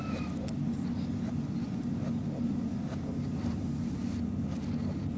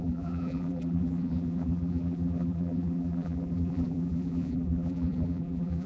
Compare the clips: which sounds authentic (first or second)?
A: first